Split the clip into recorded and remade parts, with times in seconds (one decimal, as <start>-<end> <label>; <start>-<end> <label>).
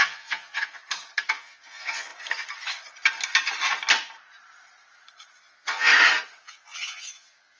0.0-0.8 remade; 0.8-1.3 recorded; 1.3-2.1 remade; 2.1-5.4 recorded; 5.4-5.9 remade; 5.9-6.4 recorded; 6.4-7.6 remade